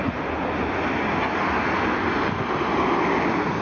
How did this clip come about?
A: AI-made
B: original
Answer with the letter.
B